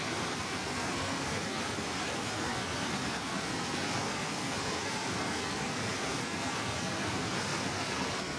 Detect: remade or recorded remade